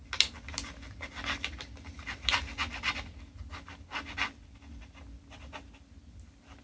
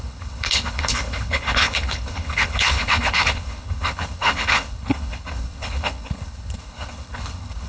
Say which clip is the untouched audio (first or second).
first